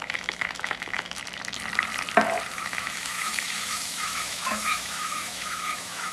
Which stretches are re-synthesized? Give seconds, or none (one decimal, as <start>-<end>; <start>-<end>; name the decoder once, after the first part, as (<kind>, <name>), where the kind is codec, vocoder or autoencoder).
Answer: 0.0-1.2 (autoencoder, DAC-VAE); 2.5-6.1